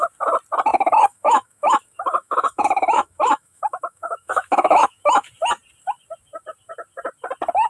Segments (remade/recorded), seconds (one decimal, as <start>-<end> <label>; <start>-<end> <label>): 0.0-0.7 recorded; 0.7-5.3 remade; 5.3-7.7 recorded